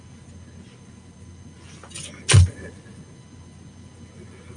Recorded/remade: recorded